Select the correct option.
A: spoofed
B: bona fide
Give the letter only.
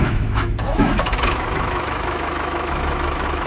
A